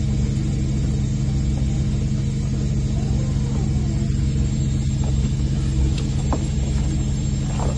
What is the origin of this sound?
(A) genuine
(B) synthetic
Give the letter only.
A